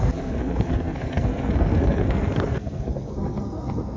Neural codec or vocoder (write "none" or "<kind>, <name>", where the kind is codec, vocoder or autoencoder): codec, SNAC